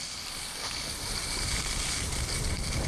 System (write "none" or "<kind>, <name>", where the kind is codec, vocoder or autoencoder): none